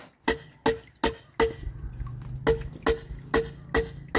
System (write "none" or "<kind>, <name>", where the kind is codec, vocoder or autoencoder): none